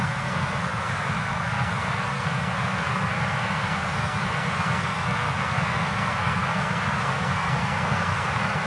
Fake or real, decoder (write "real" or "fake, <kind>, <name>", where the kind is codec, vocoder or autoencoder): fake, codec, SNAC